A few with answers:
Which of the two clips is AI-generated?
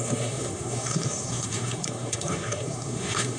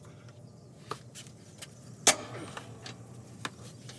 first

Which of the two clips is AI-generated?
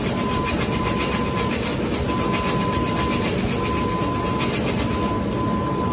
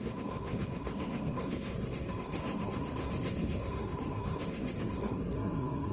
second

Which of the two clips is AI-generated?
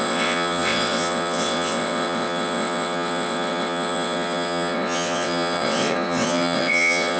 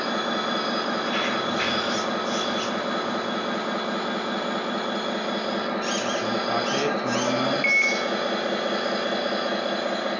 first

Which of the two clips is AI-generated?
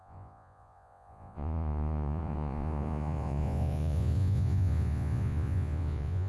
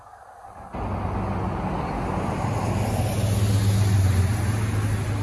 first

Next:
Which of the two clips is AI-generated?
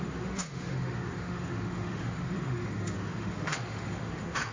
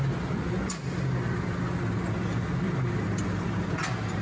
first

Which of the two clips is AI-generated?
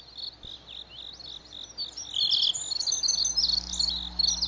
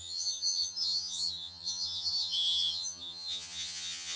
second